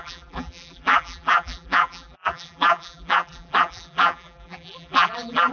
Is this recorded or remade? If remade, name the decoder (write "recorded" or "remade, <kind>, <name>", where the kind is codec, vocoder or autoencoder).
remade, vocoder, BigVGAN v2